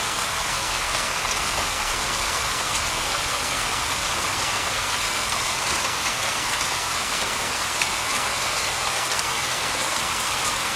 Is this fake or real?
fake